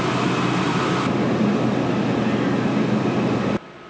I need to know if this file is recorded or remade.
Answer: recorded